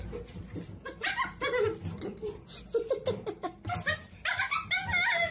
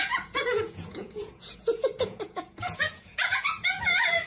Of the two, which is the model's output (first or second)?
second